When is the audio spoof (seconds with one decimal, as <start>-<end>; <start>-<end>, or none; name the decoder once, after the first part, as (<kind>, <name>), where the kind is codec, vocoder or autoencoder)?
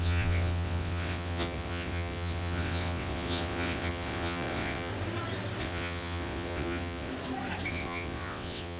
0.0-4.9 (vocoder, WaveNeXt); 5.6-7.1; 7.7-8.8